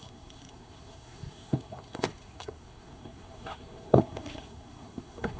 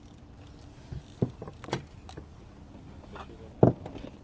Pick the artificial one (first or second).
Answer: first